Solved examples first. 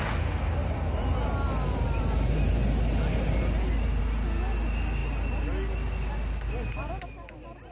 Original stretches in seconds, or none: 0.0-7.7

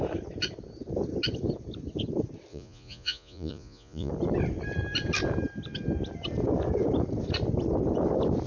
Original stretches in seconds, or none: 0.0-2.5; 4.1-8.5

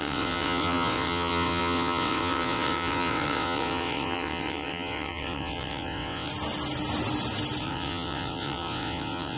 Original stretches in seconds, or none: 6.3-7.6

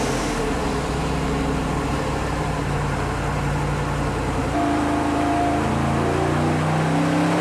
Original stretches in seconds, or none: 0.0-1.6; 3.6-4.4; 5.7-7.4